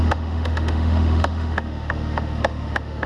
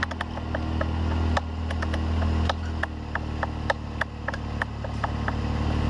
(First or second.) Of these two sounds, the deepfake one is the first